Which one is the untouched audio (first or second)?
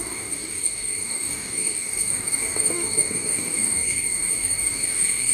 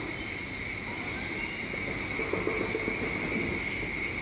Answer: second